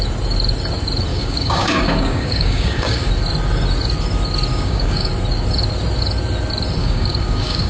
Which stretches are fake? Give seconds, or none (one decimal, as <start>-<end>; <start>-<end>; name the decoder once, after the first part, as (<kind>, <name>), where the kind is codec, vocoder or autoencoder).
1.1-3.1 (codec, DAC); 4.5-5.1; 6.8-7.7